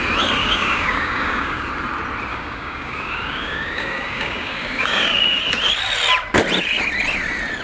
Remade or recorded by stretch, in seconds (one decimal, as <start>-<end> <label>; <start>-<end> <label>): 0.0-0.4 recorded; 0.4-1.7 remade; 1.7-2.3 recorded; 2.3-5.4 remade; 5.4-7.6 recorded